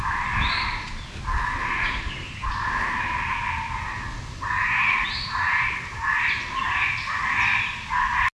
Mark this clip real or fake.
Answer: real